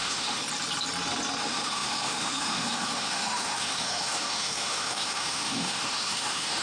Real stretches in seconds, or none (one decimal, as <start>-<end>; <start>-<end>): 0.4-1.4